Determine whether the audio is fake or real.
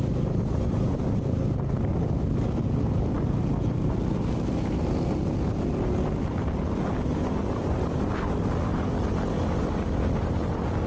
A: real